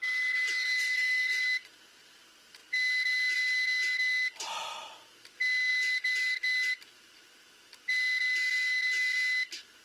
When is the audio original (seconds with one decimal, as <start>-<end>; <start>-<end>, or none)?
0.0-0.8; 1.4-9.8